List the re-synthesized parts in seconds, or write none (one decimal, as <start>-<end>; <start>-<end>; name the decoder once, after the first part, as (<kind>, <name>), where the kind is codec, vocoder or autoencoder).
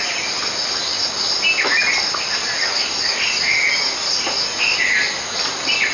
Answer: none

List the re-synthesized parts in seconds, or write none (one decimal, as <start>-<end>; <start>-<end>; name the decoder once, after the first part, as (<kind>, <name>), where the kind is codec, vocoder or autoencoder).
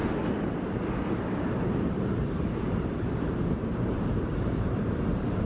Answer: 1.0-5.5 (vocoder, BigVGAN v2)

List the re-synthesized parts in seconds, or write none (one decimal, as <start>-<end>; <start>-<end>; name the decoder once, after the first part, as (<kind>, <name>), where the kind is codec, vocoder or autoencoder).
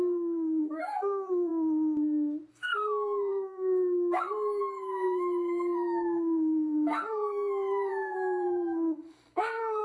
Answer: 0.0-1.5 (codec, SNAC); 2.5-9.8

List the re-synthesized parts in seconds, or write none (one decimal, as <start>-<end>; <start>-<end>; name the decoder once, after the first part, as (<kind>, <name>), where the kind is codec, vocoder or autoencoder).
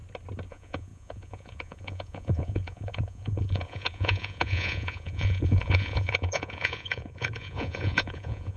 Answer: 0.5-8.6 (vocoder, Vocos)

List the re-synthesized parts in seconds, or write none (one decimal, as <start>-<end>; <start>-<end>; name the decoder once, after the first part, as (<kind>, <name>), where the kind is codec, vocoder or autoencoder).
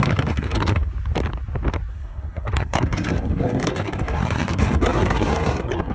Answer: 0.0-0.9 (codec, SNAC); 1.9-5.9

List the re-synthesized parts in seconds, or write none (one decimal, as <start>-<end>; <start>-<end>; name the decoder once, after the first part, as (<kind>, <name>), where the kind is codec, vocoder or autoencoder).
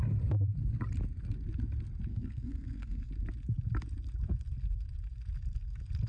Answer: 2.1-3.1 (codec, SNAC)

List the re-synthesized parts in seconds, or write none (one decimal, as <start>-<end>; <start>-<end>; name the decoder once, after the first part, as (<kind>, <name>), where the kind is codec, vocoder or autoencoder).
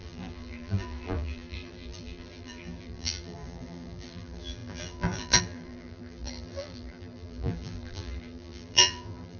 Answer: 0.0-9.4 (vocoder, BigVGAN v2)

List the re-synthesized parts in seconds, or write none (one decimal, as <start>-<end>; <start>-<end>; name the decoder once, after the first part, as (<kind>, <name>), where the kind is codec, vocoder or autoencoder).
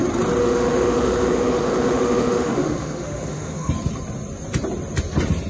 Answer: 0.4-3.7 (autoencoder, DAC-VAE)